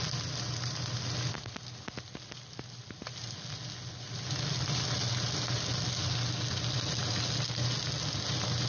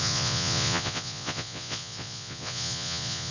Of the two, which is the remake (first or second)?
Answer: second